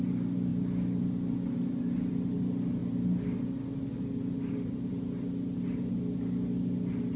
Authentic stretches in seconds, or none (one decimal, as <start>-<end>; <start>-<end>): 0.0-7.2